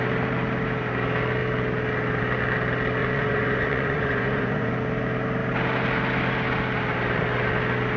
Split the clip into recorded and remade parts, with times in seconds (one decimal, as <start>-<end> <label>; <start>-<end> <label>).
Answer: 0.0-3.0 recorded; 3.0-4.7 remade; 4.7-8.0 recorded